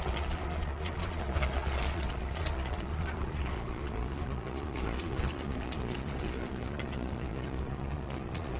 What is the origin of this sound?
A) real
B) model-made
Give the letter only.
B